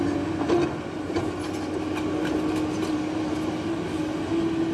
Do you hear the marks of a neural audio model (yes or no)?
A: no